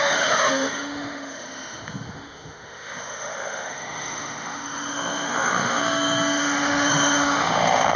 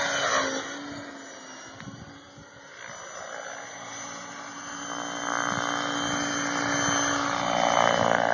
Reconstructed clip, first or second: first